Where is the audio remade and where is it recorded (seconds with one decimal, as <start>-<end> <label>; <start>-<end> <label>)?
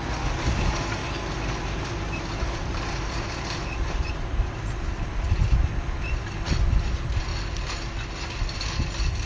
0.0-1.0 remade; 1.0-1.6 recorded; 1.6-5.4 remade; 5.4-6.8 recorded; 6.8-7.3 remade; 7.3-9.3 recorded